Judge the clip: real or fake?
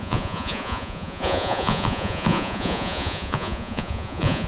fake